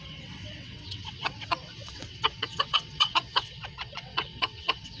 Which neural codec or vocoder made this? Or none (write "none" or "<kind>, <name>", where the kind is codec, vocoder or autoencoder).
vocoder, WaveNeXt